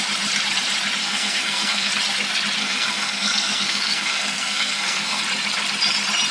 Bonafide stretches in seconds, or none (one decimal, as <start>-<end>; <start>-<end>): 0.0-1.0; 1.9-2.6; 5.2-6.3